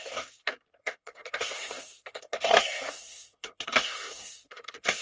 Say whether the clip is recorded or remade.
remade